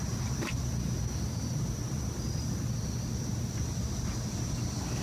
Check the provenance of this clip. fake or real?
real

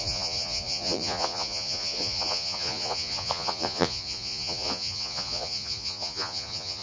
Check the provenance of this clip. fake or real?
fake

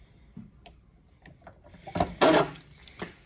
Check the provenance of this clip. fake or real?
real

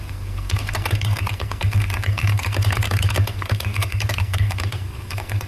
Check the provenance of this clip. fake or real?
fake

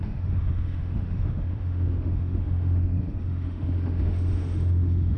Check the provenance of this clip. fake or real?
fake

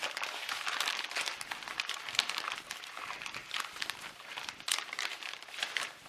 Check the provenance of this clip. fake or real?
fake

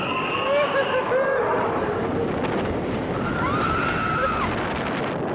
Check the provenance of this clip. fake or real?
real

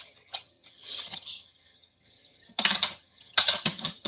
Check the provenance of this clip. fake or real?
fake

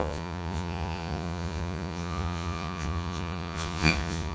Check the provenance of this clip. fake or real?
fake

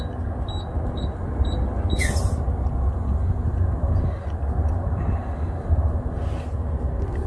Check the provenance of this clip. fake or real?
real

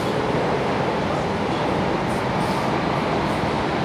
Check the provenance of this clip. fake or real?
real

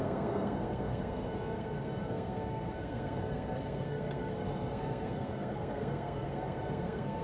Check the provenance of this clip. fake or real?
fake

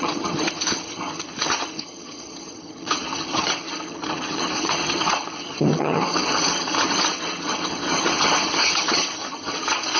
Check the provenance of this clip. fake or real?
fake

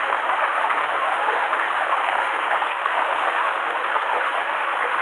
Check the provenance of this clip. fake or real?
fake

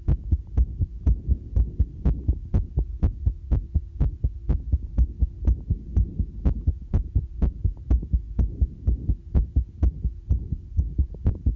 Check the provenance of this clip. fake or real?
real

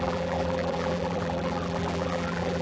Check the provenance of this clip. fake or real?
fake